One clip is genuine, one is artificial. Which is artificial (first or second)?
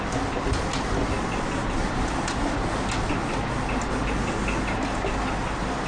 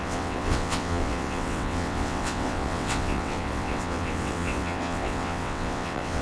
second